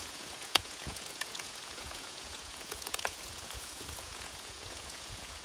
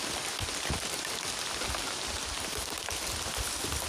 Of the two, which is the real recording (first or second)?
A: second